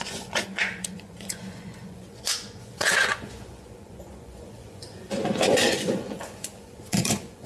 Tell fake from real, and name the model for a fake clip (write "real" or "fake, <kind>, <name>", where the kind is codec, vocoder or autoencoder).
fake, vocoder, Vocos